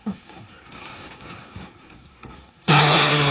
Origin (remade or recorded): remade